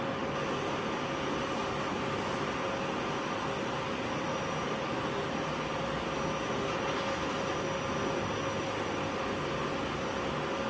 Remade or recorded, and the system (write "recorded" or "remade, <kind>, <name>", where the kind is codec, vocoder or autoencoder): recorded